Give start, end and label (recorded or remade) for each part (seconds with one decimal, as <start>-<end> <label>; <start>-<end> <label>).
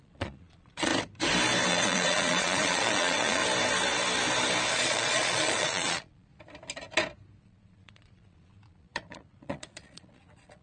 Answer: 0.0-0.9 remade; 0.9-1.7 recorded; 1.7-3.4 remade; 3.4-4.7 recorded; 4.7-6.3 remade; 6.3-7.4 recorded; 7.4-10.6 remade